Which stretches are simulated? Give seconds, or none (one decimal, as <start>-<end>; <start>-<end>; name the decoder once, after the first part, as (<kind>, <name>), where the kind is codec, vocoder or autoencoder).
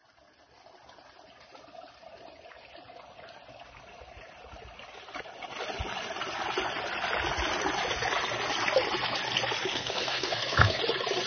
9.7-10.8 (codec, SNAC)